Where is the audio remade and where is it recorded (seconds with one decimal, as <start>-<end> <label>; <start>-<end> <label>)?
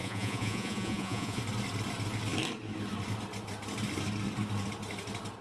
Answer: 0.0-1.4 remade; 1.4-5.4 recorded